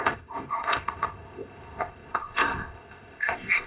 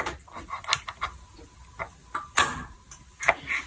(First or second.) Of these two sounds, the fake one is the first